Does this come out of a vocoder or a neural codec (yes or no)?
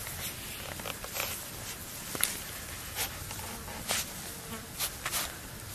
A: no